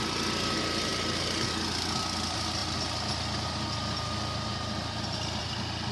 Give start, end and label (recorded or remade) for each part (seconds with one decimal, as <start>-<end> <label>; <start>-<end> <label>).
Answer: 0.0-5.9 recorded